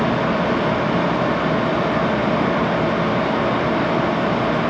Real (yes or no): yes